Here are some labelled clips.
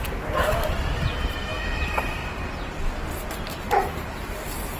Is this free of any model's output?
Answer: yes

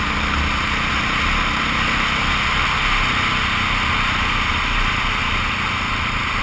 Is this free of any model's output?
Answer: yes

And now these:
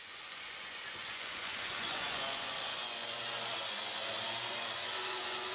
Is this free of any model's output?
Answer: no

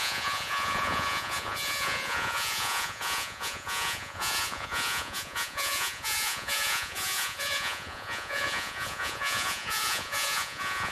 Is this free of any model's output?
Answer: no